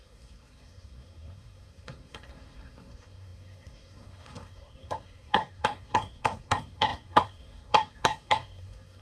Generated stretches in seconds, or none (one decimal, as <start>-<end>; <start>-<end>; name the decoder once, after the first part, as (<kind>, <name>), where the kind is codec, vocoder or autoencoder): 0.0-9.0 (codec, SNAC)